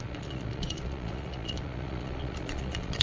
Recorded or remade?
remade